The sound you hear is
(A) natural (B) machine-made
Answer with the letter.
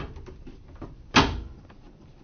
B